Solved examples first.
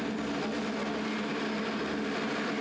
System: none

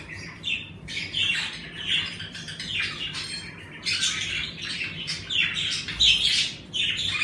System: none